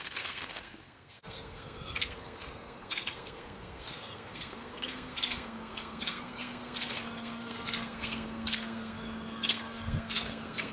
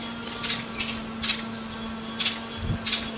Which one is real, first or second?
second